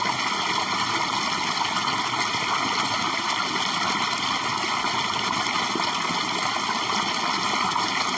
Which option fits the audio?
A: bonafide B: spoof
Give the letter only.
A